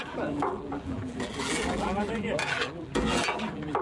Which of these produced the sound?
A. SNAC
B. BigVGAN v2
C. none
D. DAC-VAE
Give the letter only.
B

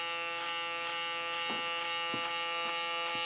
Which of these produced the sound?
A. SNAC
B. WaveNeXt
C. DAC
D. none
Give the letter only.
D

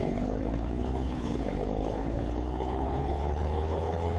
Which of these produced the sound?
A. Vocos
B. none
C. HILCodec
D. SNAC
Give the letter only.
C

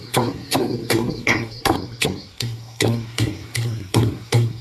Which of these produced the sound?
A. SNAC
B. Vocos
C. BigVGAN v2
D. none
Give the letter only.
A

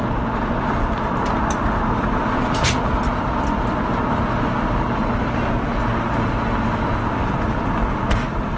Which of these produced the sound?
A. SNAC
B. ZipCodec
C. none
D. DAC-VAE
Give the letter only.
C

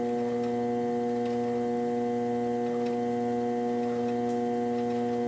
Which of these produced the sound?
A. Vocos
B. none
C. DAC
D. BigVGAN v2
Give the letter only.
B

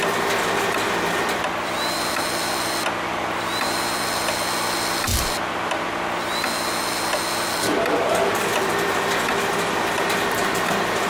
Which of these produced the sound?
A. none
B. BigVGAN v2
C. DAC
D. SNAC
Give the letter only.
A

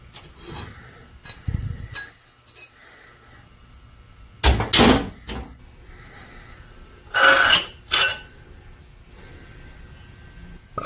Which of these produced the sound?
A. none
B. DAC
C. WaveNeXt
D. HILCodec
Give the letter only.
A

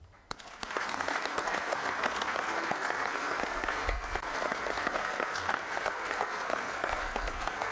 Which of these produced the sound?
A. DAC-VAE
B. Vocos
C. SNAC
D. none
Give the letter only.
C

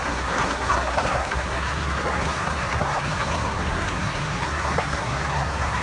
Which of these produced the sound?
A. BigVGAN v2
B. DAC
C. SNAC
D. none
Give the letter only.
C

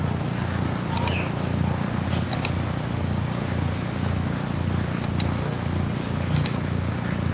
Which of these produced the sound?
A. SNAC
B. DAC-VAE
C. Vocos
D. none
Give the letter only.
D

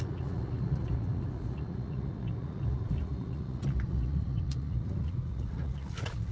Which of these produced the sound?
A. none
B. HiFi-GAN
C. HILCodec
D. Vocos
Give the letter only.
D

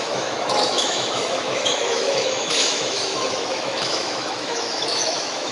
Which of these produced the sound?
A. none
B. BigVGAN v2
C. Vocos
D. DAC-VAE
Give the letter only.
D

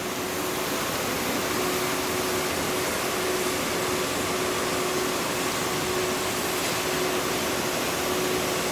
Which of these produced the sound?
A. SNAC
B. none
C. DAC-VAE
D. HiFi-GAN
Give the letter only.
B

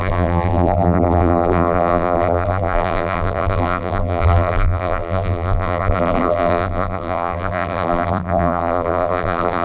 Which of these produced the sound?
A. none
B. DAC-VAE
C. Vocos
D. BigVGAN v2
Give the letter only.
D